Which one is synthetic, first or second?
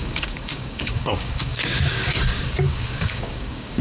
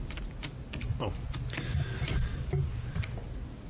first